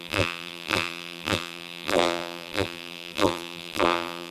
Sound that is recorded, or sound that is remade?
remade